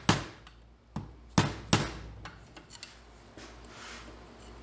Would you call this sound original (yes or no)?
yes